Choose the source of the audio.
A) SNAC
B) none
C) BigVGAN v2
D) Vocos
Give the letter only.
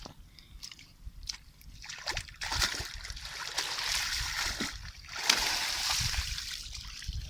C